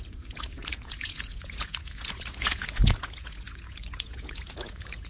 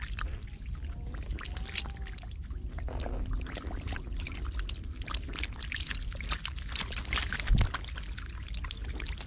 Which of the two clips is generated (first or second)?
first